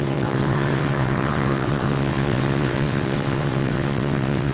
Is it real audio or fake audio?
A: fake